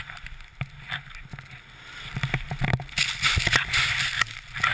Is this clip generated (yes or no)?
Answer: no